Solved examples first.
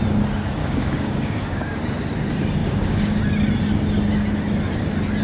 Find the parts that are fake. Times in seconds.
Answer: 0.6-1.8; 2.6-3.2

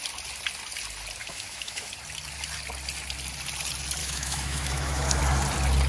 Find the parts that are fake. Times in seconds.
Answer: 1.2-1.9; 4.0-5.2

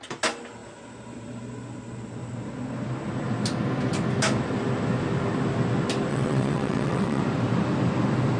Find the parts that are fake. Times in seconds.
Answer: 6.1-7.2

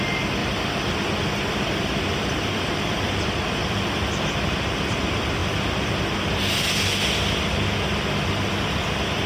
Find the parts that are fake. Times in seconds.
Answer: 0.4-4.4

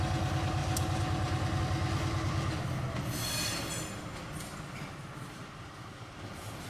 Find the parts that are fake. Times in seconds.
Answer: 0.6-1.6

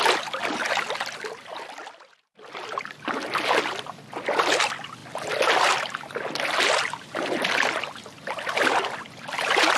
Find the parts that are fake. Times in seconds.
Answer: none